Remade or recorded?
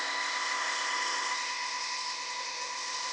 remade